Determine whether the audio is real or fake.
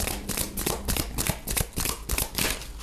real